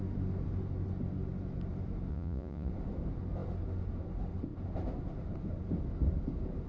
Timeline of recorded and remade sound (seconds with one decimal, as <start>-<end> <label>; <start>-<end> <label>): 0.0-2.1 recorded; 2.1-2.7 remade; 2.7-6.7 recorded